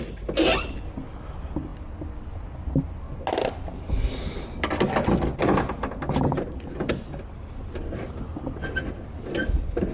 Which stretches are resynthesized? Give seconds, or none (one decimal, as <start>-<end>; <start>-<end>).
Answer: none